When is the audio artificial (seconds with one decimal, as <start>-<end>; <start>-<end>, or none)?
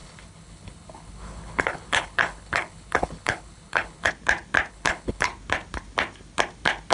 0.0-4.1; 4.7-5.3